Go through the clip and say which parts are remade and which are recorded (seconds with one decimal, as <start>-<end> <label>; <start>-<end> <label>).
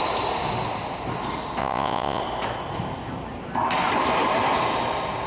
0.0-1.6 recorded; 1.6-2.2 remade; 2.2-5.3 recorded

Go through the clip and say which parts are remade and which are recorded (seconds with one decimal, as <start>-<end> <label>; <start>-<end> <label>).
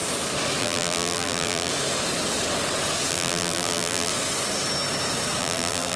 0.0-0.6 recorded; 0.6-1.7 remade; 1.7-3.1 recorded; 3.1-4.1 remade; 4.1-5.4 recorded; 5.4-6.0 remade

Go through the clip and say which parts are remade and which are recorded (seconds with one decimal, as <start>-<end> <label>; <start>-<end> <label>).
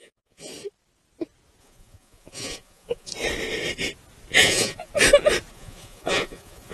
0.0-0.5 remade; 0.5-1.6 recorded; 1.6-3.1 remade; 3.1-4.4 recorded; 4.4-4.9 remade; 4.9-5.5 recorded; 5.5-6.7 remade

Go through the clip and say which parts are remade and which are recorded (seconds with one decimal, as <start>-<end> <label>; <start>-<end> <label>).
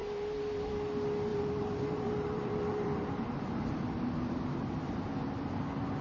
0.0-0.7 remade; 0.7-1.3 recorded; 1.3-4.9 remade; 4.9-6.0 recorded